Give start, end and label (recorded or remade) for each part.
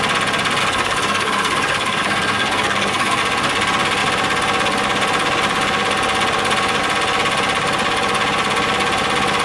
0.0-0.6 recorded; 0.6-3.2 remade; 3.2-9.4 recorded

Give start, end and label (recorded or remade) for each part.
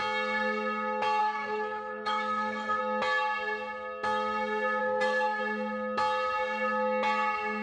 0.0-1.2 recorded; 1.2-2.8 remade; 2.8-4.8 recorded; 4.8-5.4 remade; 5.4-7.6 recorded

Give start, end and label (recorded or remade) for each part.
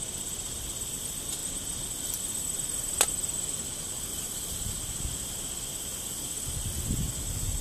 0.0-7.6 recorded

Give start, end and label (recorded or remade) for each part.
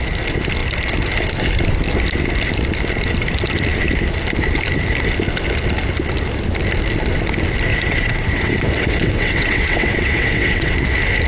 0.0-7.7 recorded; 7.7-10.7 remade; 10.7-11.3 recorded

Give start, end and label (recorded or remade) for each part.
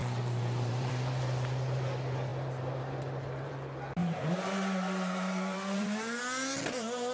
0.0-0.9 remade; 0.9-4.0 recorded; 4.0-6.2 remade; 6.2-7.1 recorded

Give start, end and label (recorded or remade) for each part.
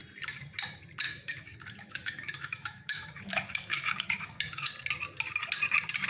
0.0-1.0 recorded; 1.0-4.7 remade; 4.7-6.1 recorded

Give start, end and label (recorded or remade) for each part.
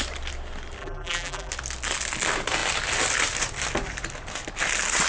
0.0-0.8 recorded; 0.8-1.5 remade; 1.5-5.1 recorded